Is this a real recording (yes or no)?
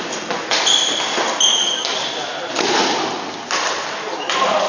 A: yes